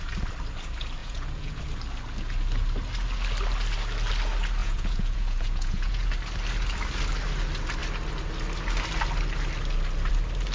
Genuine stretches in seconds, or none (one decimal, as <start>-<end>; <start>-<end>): 0.0-1.0; 1.6-4.6; 6.1-10.5